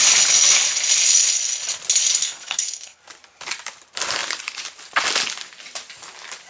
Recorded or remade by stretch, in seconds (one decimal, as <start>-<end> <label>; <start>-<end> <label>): 0.0-2.2 recorded; 2.2-3.0 remade; 3.0-6.5 recorded